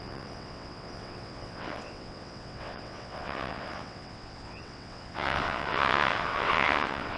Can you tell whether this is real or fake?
fake